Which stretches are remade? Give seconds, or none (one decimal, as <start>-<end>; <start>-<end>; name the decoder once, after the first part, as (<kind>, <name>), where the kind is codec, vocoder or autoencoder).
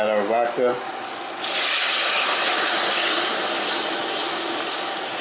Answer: none